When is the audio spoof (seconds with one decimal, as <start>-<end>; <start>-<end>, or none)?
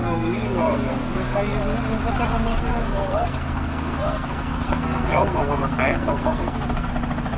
0.0-1.4; 2.5-6.9